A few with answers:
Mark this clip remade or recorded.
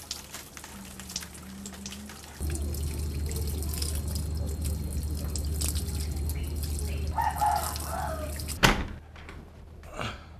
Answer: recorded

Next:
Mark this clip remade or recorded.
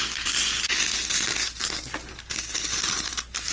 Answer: recorded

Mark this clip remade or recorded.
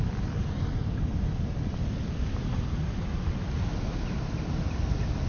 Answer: recorded